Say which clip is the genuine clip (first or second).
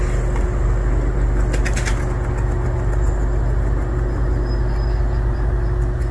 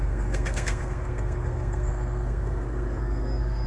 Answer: first